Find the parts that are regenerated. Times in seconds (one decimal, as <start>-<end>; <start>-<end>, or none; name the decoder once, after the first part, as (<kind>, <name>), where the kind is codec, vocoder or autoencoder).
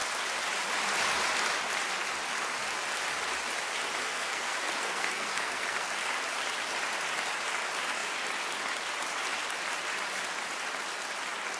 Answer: 4.0-6.1 (codec, SNAC)